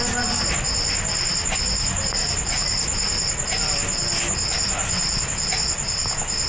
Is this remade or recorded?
recorded